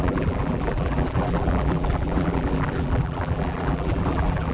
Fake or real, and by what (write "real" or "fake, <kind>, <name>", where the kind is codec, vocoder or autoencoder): fake, vocoder, BigVGAN v2